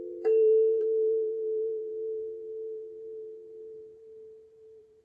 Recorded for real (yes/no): no